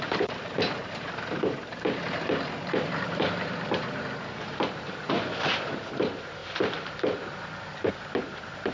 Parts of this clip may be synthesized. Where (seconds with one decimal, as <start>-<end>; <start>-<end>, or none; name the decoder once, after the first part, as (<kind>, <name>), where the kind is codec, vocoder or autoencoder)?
0.0-8.7 (vocoder, BigVGAN v2)

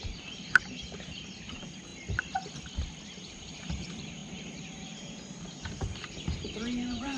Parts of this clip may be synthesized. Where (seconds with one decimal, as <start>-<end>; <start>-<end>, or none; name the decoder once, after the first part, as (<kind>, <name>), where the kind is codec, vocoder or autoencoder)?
0.0-1.9 (vocoder, BigVGAN v2); 3.2-7.2